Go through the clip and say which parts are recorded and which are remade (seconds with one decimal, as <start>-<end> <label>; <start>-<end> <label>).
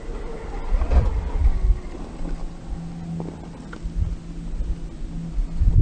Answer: 0.0-5.8 recorded